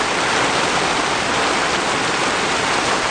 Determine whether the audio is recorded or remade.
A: recorded